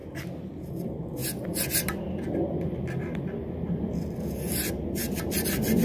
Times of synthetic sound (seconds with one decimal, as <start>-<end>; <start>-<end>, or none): none